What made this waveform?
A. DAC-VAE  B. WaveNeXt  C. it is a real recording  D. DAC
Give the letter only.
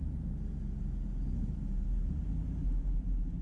C